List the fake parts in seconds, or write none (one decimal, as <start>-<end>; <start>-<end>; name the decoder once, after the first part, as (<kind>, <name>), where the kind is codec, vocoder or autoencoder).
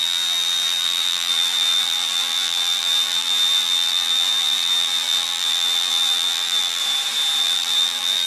0.0-6.8 (vocoder, BigVGAN v2); 7.4-8.3